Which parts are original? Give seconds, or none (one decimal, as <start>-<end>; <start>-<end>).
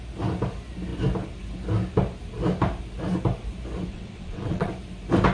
0.0-3.9; 4.7-5.3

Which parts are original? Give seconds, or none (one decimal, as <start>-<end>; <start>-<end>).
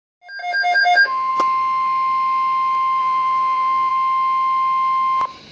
0.0-0.4; 1.3-3.0; 3.9-5.5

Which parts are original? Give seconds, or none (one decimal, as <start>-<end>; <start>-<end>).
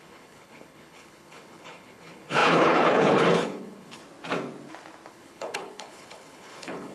4.0-5.1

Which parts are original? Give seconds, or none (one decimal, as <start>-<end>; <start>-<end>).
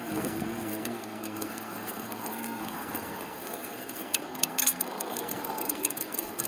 none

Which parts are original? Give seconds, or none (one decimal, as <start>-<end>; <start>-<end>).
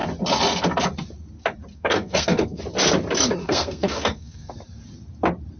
0.0-1.7; 2.6-3.4; 4.5-5.6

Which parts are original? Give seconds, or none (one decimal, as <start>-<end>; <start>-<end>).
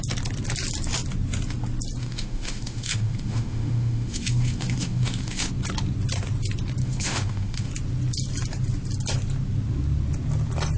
0.0-2.0; 5.5-6.8; 7.7-10.8